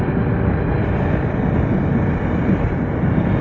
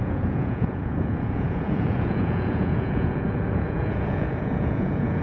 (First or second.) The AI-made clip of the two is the second